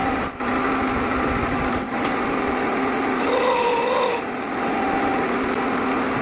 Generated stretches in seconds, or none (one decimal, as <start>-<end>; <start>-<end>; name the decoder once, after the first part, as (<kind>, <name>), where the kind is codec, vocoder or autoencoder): none